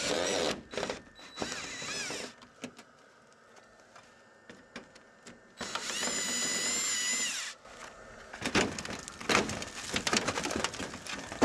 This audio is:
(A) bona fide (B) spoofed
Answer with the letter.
A